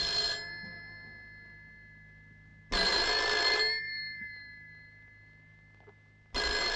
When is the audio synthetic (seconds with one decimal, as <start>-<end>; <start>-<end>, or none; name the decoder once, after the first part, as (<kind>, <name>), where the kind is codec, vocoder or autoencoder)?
none